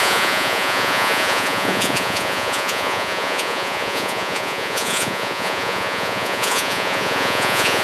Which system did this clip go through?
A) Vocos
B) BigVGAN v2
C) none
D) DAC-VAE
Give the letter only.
A